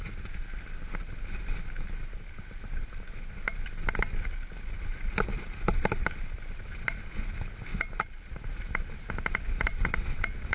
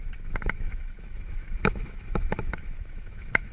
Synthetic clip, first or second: second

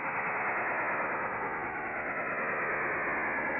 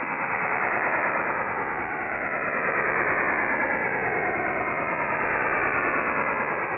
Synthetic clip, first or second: second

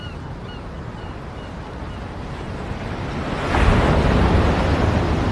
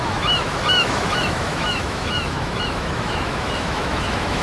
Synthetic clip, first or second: second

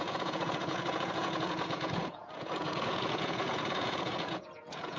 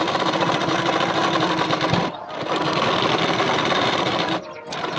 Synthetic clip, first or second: first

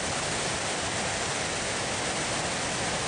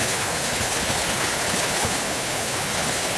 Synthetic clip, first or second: second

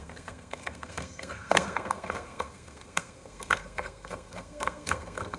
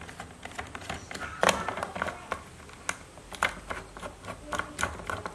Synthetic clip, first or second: first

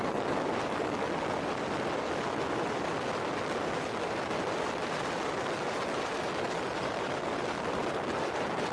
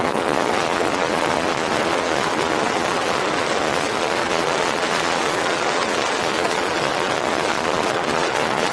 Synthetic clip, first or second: second